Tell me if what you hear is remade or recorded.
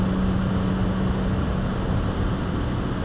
recorded